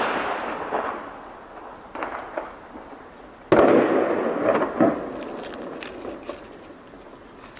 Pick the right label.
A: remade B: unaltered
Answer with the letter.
B